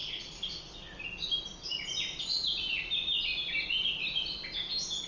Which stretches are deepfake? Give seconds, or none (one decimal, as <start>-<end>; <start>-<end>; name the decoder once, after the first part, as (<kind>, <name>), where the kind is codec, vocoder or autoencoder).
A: none